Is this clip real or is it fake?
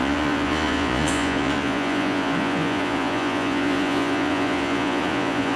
fake